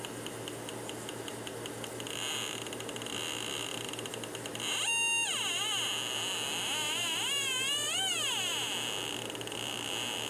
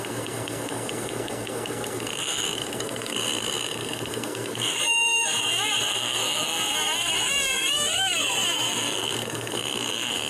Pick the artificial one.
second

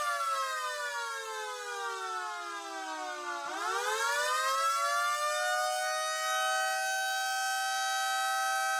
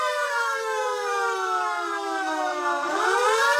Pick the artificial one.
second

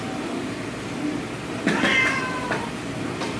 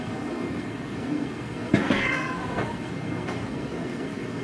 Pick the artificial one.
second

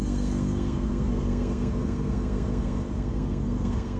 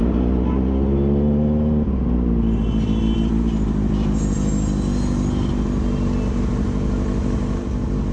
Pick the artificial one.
first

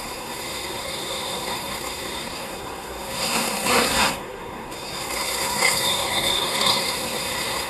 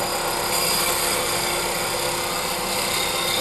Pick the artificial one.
first